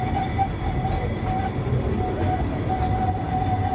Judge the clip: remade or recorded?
recorded